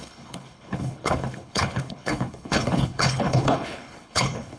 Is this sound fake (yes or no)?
yes